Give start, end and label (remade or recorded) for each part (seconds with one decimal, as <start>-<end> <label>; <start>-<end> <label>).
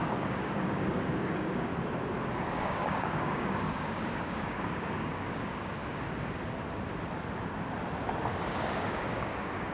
0.0-1.7 remade; 1.7-2.3 recorded; 2.3-5.8 remade; 5.8-8.5 recorded; 8.5-9.7 remade